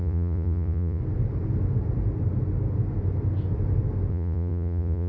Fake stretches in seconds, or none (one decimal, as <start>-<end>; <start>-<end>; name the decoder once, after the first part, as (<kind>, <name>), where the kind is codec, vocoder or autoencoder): 0.0-1.0 (vocoder, Vocos); 4.1-5.1